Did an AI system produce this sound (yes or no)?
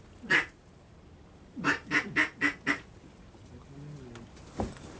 no